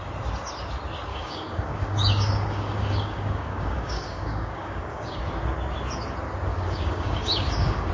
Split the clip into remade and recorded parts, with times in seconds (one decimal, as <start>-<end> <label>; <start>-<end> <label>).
0.0-1.1 recorded; 1.1-5.2 remade; 5.2-6.5 recorded; 6.5-7.9 remade